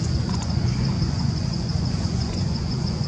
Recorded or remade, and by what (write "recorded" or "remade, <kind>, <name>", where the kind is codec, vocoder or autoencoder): remade, vocoder, Vocos